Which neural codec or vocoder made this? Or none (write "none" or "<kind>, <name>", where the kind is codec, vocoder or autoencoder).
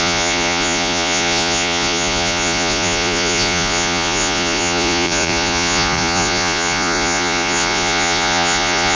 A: vocoder, Vocos